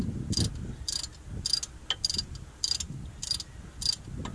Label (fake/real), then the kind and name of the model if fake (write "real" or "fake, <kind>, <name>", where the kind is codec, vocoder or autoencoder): real